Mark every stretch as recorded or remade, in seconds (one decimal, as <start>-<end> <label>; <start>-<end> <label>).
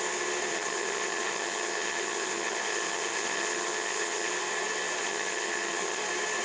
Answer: 0.0-0.5 recorded; 0.5-4.3 remade; 4.3-5.0 recorded; 5.0-6.0 remade; 6.0-6.4 recorded